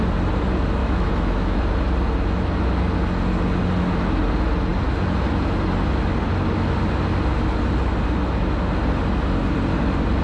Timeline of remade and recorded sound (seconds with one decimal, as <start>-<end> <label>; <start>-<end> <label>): 0.0-0.8 recorded; 0.8-1.6 remade; 1.6-10.2 recorded

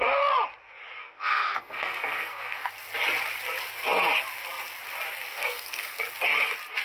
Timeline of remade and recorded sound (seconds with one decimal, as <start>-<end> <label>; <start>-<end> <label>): 0.0-1.0 recorded; 1.0-2.7 remade; 2.7-5.3 recorded; 5.3-6.0 remade; 6.0-6.8 recorded

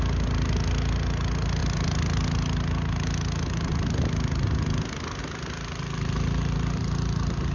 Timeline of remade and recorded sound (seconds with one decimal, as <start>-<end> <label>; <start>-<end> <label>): 0.0-7.5 recorded

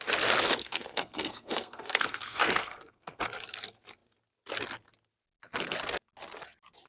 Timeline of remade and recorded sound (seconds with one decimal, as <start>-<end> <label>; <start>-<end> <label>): 0.0-0.6 recorded; 0.6-3.2 remade; 3.2-6.9 recorded